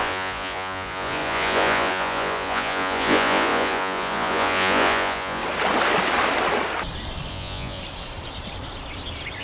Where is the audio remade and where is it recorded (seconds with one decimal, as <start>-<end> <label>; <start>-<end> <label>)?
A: 0.0-5.4 remade; 5.4-7.3 recorded; 7.3-7.8 remade; 7.8-9.4 recorded

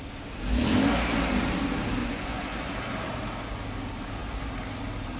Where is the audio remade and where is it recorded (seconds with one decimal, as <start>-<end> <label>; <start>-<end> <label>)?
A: 0.0-2.0 recorded; 2.0-2.7 remade; 2.7-5.2 recorded

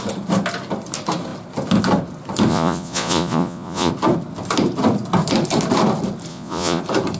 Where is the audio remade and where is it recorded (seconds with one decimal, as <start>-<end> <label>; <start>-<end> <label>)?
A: 0.0-2.5 recorded; 2.5-3.9 remade; 3.9-6.3 recorded; 6.3-6.8 remade; 6.8-7.2 recorded